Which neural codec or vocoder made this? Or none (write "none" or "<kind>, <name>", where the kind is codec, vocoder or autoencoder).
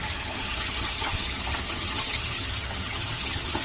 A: vocoder, HiFi-GAN